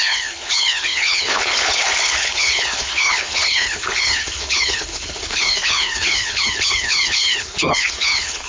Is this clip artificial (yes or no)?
yes